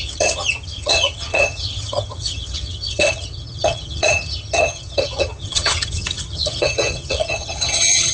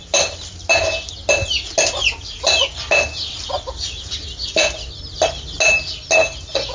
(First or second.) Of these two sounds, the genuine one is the second